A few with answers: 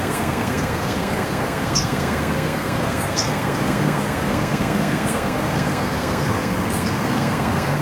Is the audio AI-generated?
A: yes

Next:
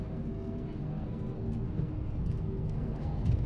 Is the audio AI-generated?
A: yes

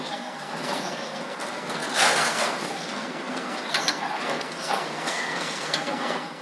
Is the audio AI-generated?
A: yes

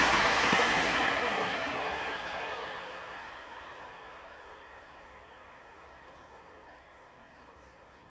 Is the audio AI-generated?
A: yes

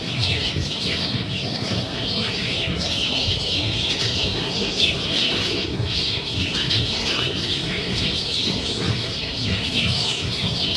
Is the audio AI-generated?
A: yes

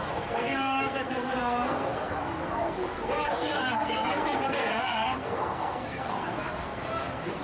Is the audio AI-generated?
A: yes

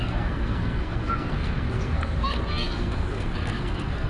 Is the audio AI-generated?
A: yes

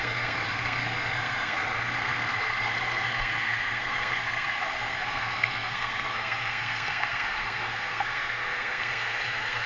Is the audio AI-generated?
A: yes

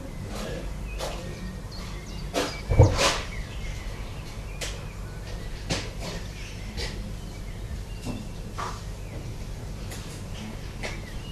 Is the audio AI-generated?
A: no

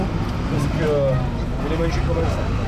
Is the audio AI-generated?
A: no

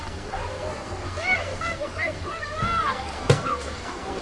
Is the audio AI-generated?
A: yes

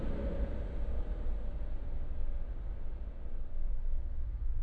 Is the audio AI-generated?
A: no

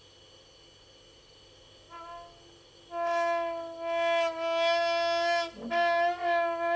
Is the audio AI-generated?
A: no